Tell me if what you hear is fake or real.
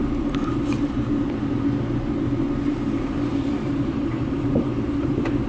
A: fake